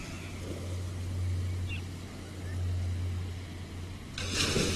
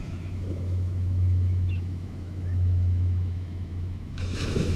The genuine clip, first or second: first